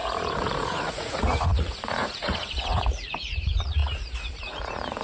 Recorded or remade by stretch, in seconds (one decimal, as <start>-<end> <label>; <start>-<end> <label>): 0.0-5.0 remade